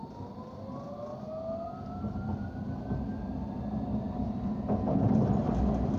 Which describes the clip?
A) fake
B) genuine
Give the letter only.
B